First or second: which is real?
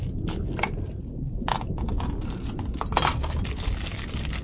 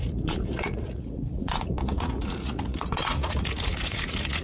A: first